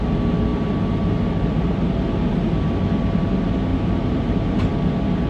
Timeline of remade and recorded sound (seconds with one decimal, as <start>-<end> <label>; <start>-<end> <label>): 0.0-3.7 recorded; 3.7-4.6 remade; 4.6-5.3 recorded